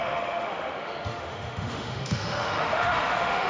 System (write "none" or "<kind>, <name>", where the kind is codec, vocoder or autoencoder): autoencoder, DAC-VAE